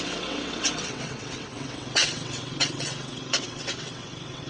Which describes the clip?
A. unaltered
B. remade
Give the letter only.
B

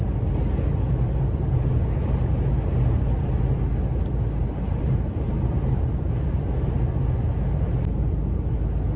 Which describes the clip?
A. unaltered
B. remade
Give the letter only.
A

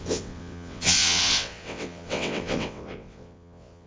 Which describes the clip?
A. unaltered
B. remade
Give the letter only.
B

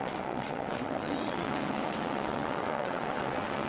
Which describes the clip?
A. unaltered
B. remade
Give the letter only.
B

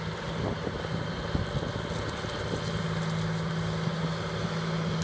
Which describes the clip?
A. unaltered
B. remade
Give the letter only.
A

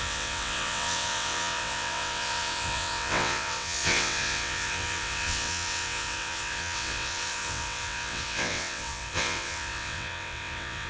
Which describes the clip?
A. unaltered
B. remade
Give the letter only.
B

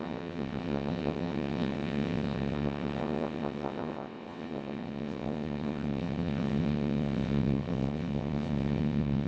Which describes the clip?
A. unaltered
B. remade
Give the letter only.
B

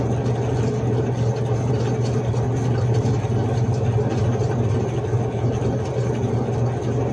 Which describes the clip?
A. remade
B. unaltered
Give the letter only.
B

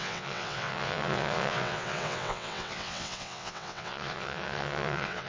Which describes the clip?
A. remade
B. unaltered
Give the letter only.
A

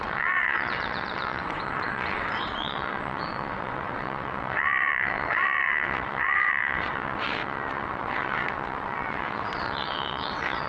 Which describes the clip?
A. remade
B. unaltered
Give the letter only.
A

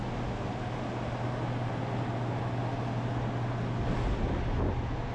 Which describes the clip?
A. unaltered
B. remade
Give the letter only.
A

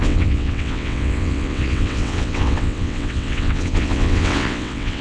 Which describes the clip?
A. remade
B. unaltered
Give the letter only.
A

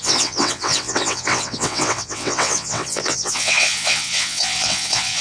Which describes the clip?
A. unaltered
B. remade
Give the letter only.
B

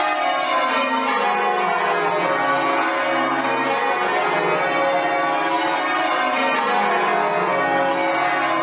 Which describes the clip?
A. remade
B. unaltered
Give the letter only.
B